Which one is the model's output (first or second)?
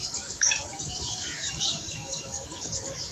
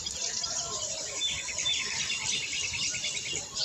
first